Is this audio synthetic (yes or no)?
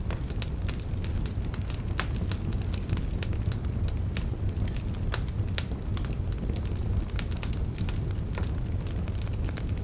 no